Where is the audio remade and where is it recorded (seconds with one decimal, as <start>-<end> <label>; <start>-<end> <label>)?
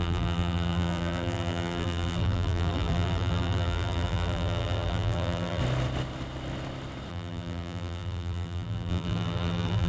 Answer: 0.0-5.6 remade; 5.6-7.1 recorded; 7.1-9.9 remade